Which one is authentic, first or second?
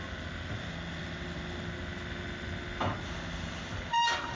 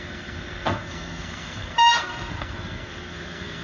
first